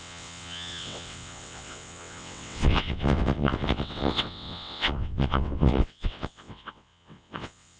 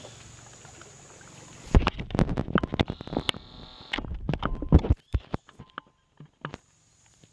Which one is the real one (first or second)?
second